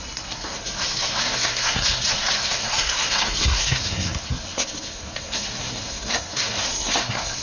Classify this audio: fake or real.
fake